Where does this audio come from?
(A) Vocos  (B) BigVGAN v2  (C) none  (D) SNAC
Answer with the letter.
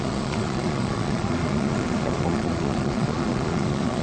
A